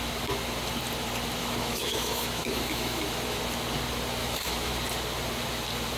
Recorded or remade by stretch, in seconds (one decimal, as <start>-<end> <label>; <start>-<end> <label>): 0.0-1.4 recorded; 1.4-3.4 remade; 3.4-4.2 recorded; 4.2-4.7 remade; 4.7-6.0 recorded